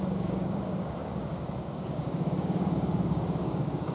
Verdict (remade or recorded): remade